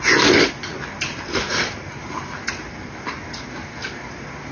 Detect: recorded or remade recorded